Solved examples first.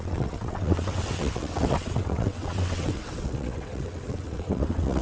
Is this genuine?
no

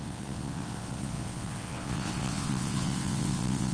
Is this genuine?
no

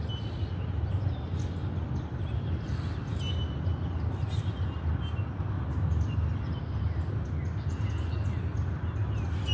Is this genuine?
yes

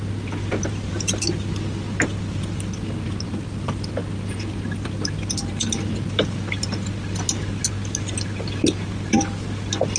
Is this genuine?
yes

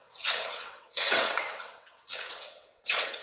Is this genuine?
no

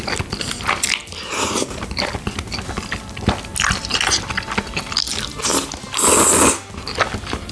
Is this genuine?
yes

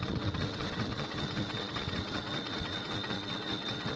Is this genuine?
no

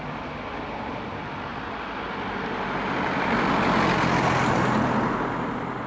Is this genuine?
yes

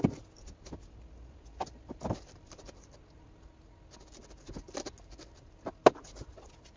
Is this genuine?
yes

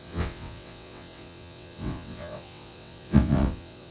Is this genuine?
no